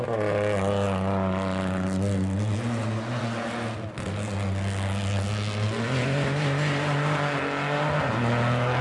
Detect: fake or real real